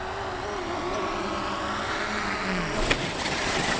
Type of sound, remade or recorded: recorded